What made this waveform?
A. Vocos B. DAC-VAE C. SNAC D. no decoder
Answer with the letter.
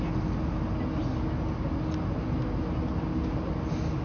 D